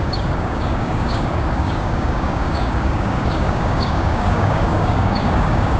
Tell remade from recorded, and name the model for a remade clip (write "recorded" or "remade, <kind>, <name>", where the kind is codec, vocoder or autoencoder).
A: remade, codec, DAC